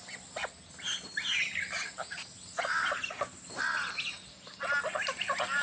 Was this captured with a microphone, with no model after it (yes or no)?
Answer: yes